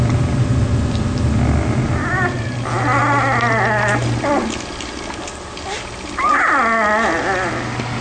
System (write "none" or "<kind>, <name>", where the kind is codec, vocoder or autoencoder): none